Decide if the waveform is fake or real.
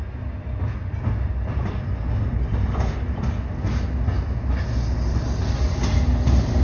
real